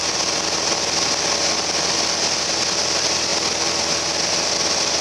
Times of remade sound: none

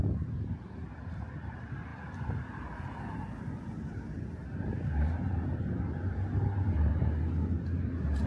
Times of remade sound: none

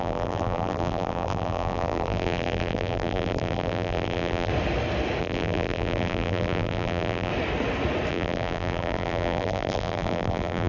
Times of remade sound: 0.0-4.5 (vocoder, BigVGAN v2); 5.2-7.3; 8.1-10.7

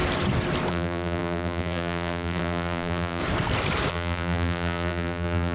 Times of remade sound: 0.7-3.2 (vocoder, BigVGAN v2); 3.9-5.5

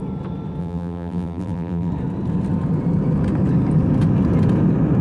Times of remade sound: 0.6-1.9 (vocoder, BigVGAN v2)

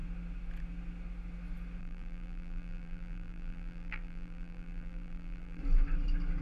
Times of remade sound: 1.8-5.6 (vocoder, BigVGAN v2)